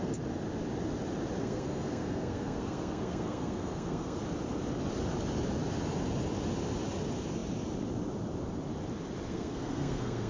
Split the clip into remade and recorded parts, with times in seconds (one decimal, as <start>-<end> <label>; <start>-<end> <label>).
0.0-1.4 recorded; 1.4-4.2 remade; 4.2-9.3 recorded; 9.3-10.3 remade